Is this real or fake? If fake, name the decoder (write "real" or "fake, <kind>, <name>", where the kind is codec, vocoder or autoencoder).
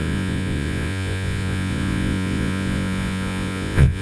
fake, vocoder, Vocos